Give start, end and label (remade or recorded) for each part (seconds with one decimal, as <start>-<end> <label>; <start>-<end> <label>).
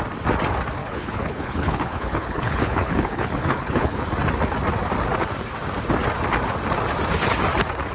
0.0-0.8 recorded; 0.8-4.0 remade; 4.0-7.9 recorded